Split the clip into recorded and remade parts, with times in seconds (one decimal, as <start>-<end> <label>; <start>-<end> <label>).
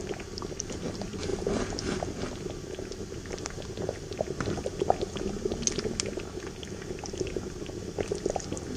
0.0-8.8 recorded